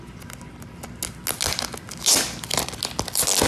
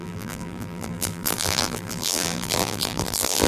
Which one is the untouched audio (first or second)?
first